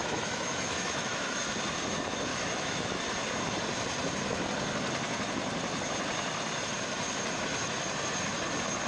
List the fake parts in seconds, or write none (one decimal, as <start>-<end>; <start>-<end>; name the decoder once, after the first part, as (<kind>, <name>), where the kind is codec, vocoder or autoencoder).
0.0-1.4 (autoencoder, DAC-VAE); 2.3-3.0